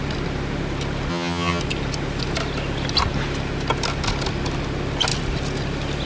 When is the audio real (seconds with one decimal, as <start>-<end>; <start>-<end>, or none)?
0.0-1.1; 1.6-6.1